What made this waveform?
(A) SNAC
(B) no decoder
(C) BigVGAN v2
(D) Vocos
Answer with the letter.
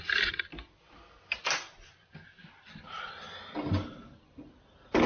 B